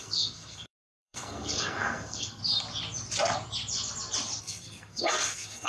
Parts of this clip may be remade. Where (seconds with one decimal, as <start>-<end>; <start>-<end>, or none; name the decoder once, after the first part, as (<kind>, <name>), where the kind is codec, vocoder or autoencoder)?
0.0-2.4 (codec, SNAC); 4.4-5.7